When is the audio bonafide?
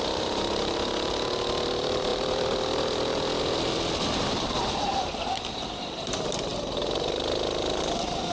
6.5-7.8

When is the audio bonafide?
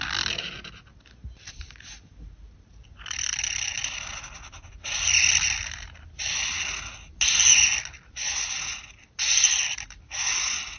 0.0-10.8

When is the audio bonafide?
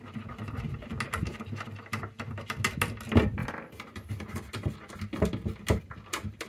0.0-6.5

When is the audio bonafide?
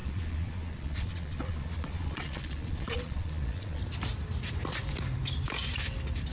3.8-6.3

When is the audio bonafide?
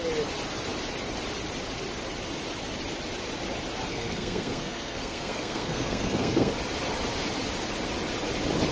0.0-3.9; 6.5-8.7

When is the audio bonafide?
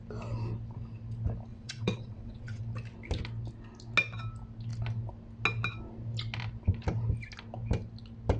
0.0-1.5; 2.6-8.4